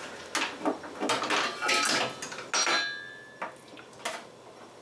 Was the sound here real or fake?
real